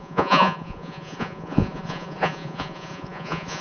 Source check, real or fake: fake